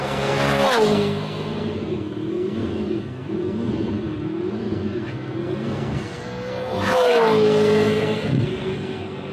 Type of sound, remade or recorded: remade